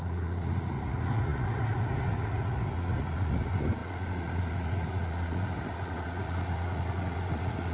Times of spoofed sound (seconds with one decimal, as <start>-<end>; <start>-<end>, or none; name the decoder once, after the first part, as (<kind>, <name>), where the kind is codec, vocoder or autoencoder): 0.0-7.7 (vocoder, Vocos)